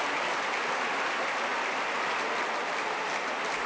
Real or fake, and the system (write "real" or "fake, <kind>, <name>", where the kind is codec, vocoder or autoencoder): real